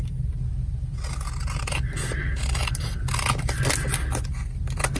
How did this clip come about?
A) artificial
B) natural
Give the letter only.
B